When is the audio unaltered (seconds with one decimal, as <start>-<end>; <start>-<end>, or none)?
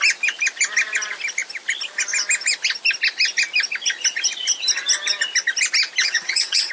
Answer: 0.0-6.0